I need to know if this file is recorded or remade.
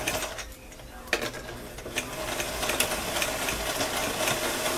recorded